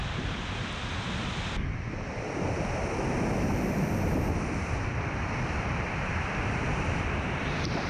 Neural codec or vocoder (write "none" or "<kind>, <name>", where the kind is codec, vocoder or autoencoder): vocoder, BigVGAN v2